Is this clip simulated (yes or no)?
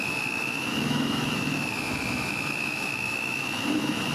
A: yes